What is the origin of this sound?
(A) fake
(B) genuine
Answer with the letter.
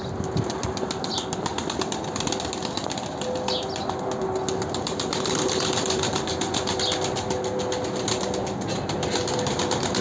B